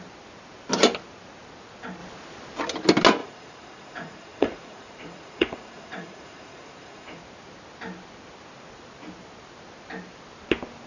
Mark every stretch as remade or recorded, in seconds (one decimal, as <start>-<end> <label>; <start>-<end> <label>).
0.0-3.2 recorded; 3.2-7.2 remade; 7.2-10.9 recorded